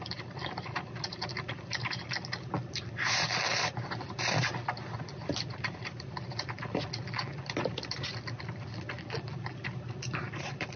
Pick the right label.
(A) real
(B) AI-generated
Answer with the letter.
A